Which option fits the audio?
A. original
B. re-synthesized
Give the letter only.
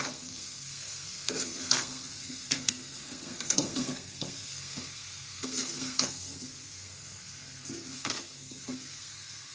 B